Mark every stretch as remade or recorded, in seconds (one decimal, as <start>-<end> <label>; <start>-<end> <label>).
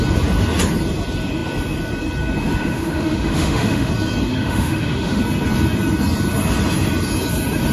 0.0-2.6 recorded; 2.6-3.9 remade; 3.9-4.3 recorded; 4.3-5.2 remade; 5.2-7.7 recorded